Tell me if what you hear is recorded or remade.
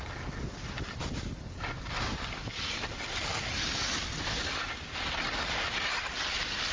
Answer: recorded